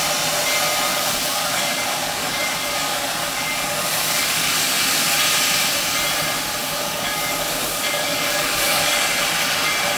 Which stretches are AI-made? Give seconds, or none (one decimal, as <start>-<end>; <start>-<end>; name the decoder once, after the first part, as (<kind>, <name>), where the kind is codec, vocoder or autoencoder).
0.9-5.1 (codec, DAC); 6.6-9.0